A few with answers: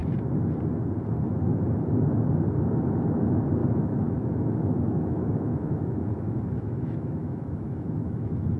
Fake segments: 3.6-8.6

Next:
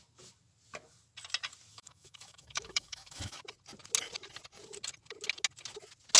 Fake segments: 1.7-3.4

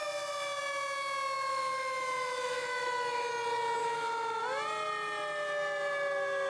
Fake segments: 1.5-3.3; 3.8-4.4

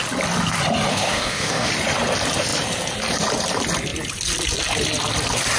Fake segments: 0.9-1.7

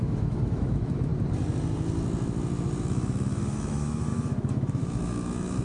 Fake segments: 0.0-1.1; 2.8-5.6

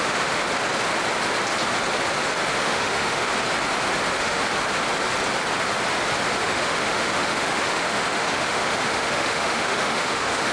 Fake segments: 0.0-0.4; 2.6-3.3; 4.1-4.5; 6.4-10.5